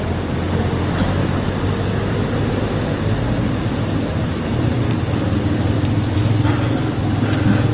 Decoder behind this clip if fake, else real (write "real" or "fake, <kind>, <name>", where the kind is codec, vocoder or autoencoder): real